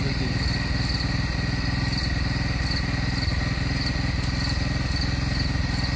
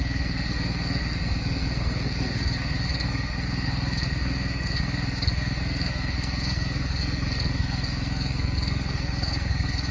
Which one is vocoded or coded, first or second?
second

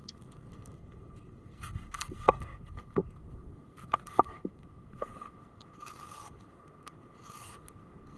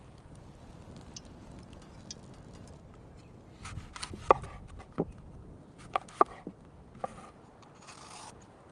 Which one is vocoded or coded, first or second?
first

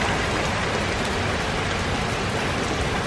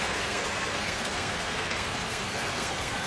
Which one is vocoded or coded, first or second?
second